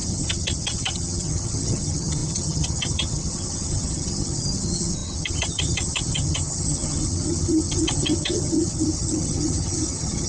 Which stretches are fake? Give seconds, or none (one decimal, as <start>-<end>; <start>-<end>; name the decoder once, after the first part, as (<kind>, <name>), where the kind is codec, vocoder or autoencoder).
0.0-10.3 (vocoder, HiFi-GAN)